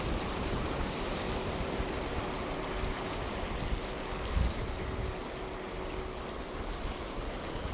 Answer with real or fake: real